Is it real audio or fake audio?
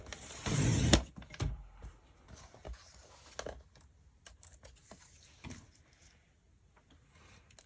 real